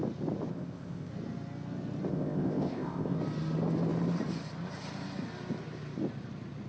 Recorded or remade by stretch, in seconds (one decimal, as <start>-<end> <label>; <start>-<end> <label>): 0.0-0.5 recorded; 0.5-1.1 remade; 1.1-2.1 recorded; 2.1-3.2 remade; 3.2-6.7 recorded